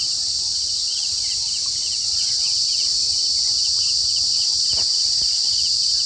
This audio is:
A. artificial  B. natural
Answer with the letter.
A